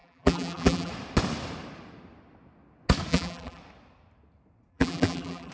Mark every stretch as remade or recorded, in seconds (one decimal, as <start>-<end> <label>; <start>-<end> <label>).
0.0-0.9 remade; 0.9-3.1 recorded; 3.1-3.6 remade; 3.6-4.7 recorded; 4.7-5.5 remade